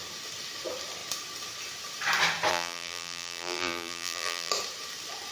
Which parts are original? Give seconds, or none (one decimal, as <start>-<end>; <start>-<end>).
0.0-2.5; 4.5-5.3